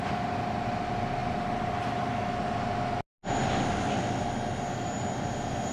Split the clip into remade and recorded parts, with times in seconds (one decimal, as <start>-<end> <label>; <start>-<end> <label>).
0.0-5.7 recorded